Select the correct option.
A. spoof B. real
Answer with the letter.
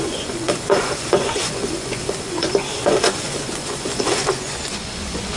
A